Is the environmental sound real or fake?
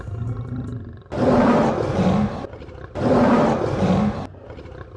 real